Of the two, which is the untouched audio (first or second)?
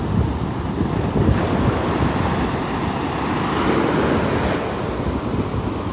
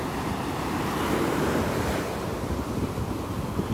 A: first